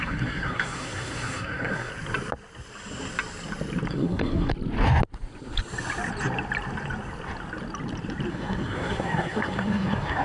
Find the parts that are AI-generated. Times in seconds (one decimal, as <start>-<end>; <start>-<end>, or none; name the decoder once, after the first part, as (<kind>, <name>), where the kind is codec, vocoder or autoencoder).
0.0-1.9 (codec, SNAC); 3.9-4.5; 8.3-10.2